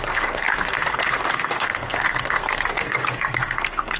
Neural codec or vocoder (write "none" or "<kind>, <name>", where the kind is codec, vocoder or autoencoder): codec, SNAC